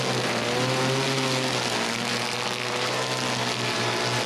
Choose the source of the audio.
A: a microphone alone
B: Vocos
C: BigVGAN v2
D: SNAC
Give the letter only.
A